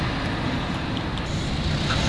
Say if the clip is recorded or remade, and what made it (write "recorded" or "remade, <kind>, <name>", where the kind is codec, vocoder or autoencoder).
recorded